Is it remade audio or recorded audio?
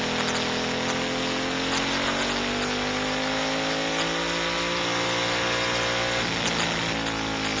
recorded